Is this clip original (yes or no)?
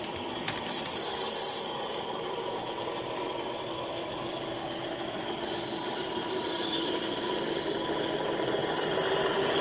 no